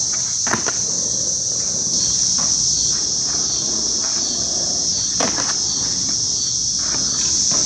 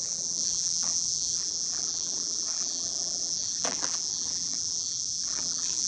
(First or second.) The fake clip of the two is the second